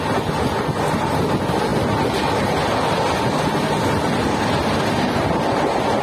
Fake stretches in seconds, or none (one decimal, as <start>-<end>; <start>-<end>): none